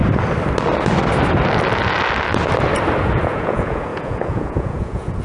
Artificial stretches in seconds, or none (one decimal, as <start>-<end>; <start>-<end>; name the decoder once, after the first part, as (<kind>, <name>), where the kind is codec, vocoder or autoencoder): 3.1-5.2 (vocoder, Vocos)